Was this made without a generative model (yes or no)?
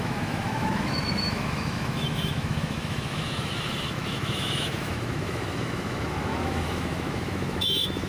no